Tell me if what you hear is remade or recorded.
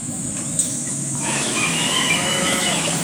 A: remade